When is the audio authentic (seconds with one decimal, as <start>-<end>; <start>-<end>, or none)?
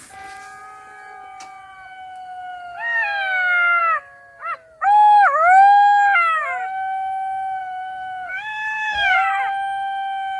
0.0-7.6; 9.4-10.4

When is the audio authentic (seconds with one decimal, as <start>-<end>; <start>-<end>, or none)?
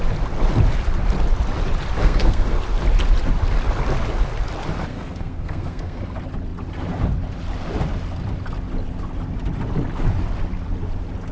0.0-2.0; 2.6-4.9; 6.0-11.3